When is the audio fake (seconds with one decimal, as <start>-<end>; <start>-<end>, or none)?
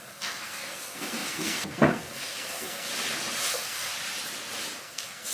0.0-2.9; 3.5-3.9; 4.8-5.3